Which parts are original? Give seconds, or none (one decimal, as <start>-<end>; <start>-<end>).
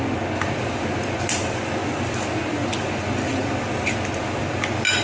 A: 0.0-5.0